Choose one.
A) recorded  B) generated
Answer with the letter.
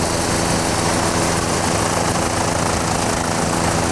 A